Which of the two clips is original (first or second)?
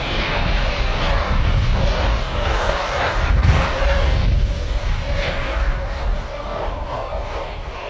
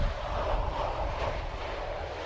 second